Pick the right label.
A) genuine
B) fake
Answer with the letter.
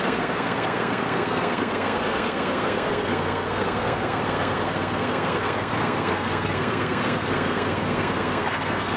B